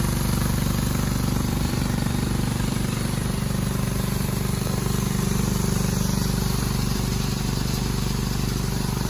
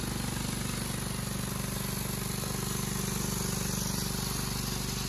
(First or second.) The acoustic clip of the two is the second